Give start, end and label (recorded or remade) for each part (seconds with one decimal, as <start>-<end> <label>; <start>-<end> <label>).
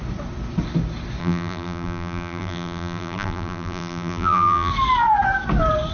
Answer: 0.0-1.2 recorded; 1.2-4.7 remade; 4.7-5.9 recorded